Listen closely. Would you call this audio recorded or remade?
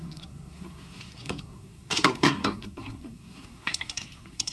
remade